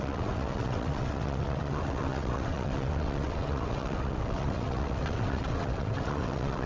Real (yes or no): no